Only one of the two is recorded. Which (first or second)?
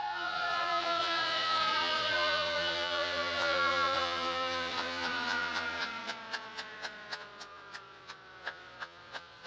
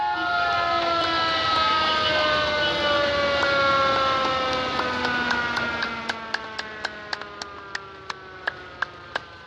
second